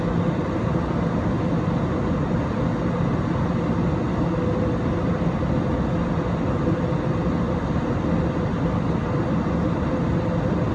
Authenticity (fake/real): real